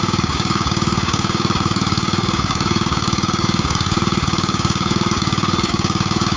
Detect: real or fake fake